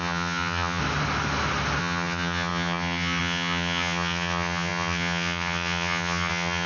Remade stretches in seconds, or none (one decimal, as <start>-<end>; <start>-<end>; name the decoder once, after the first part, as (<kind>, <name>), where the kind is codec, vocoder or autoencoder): 0.0-0.8 (vocoder, HiFi-GAN); 1.8-6.7